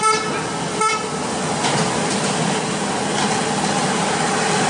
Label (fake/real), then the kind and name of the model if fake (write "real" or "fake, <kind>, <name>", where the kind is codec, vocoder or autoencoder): real